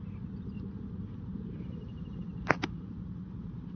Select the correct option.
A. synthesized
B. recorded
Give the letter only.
B